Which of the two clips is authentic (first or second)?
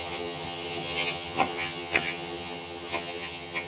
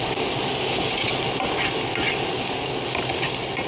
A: second